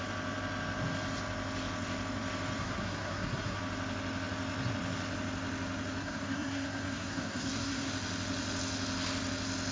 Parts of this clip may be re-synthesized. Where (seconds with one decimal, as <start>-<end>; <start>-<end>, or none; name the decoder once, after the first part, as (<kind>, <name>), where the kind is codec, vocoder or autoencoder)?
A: 2.6-3.6 (codec, SNAC); 6.0-7.9